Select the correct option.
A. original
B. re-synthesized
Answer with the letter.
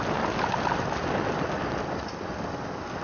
A